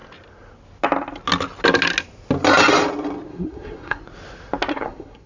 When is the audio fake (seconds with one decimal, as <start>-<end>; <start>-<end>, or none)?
3.3-4.0; 4.7-5.3